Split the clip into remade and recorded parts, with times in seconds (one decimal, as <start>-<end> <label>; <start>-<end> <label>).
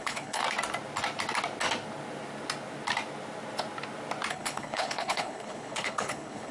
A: 0.0-0.4 remade; 0.4-4.3 recorded; 4.3-6.5 remade